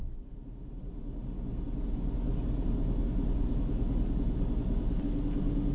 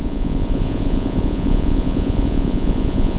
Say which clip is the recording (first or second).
first